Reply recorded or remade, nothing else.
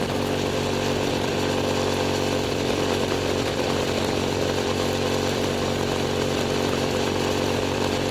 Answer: remade